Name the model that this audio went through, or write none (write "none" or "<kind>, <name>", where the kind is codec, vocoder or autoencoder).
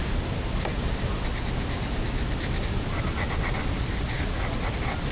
none